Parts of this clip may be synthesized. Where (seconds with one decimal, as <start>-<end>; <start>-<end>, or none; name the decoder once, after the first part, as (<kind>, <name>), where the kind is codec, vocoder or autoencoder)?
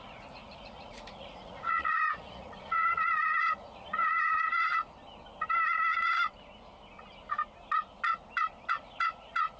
0.0-4.7 (vocoder, Vocos); 8.7-9.6